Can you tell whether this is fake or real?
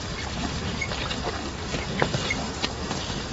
real